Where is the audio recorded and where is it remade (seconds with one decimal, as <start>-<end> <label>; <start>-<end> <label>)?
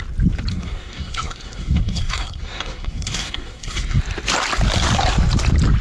0.0-0.5 recorded; 0.5-4.0 remade; 4.0-5.8 recorded